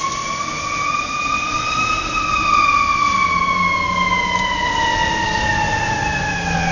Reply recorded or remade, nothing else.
recorded